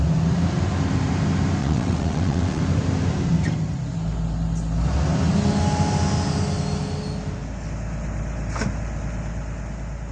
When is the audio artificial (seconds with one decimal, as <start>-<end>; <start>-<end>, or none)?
1.6-2.6